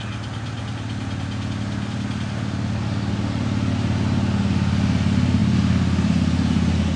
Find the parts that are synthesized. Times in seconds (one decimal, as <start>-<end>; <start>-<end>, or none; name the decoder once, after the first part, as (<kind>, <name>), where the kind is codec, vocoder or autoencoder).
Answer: none